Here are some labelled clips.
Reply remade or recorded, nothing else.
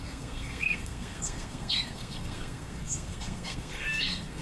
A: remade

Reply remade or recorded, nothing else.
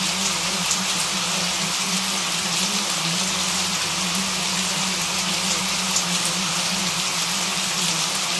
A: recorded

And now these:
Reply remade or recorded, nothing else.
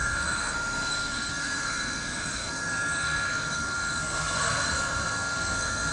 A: remade